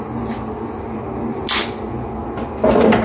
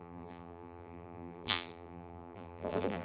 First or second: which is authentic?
first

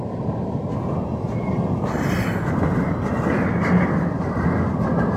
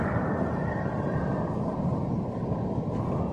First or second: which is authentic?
first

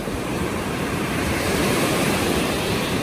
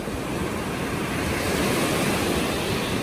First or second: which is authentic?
second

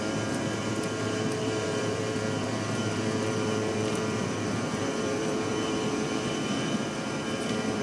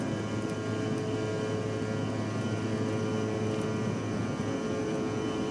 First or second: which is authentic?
second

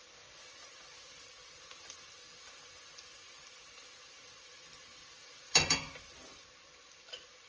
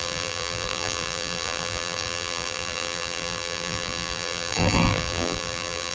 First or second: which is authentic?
first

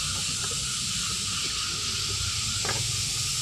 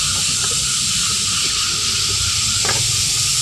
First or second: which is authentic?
first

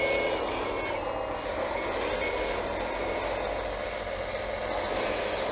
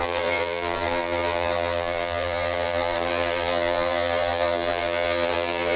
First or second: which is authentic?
first